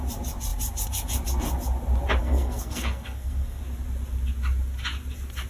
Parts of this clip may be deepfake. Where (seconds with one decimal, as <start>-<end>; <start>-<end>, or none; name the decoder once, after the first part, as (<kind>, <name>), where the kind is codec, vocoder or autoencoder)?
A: 2.2-3.6 (codec, SNAC)